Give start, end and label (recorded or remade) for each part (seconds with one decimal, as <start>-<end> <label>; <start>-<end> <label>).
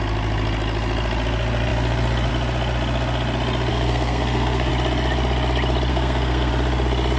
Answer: 0.0-3.7 recorded; 3.7-4.7 remade; 4.7-5.9 recorded; 5.9-6.5 remade; 6.5-7.2 recorded